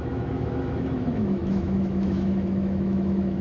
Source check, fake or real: fake